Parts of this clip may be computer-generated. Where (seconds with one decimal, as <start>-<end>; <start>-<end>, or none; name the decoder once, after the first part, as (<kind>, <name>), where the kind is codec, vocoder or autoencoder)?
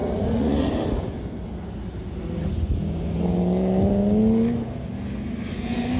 0.0-0.7 (vocoder, Vocos)